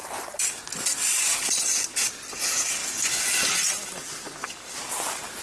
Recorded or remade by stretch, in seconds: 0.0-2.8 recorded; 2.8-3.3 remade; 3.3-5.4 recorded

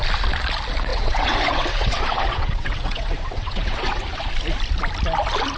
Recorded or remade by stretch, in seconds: 0.0-0.9 recorded; 0.9-4.3 remade; 4.3-5.6 recorded

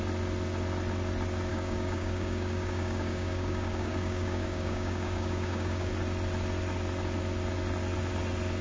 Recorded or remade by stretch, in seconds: 0.0-1.5 recorded; 1.5-5.9 remade; 5.9-8.6 recorded

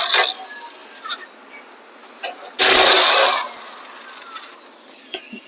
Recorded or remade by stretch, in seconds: 0.0-5.5 recorded

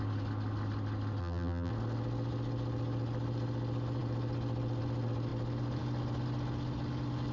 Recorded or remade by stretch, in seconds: 0.0-1.2 recorded; 1.2-1.7 remade; 1.7-7.3 recorded